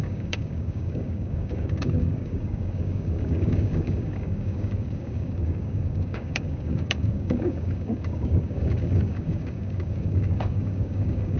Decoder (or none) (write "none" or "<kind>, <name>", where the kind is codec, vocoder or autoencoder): codec, DAC